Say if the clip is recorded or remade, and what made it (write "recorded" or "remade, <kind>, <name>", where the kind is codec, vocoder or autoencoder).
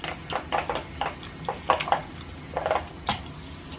recorded